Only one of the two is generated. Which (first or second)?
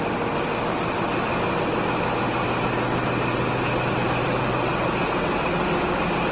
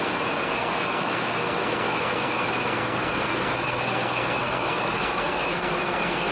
second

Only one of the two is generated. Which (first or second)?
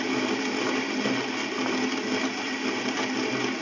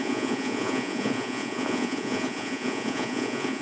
second